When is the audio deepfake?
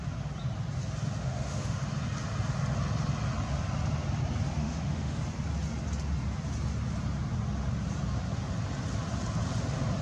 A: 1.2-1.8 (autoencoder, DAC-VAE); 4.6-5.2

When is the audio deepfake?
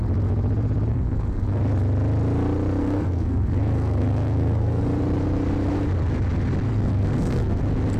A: 0.9-1.6 (codec, SNAC); 2.8-4.8; 6.7-7.6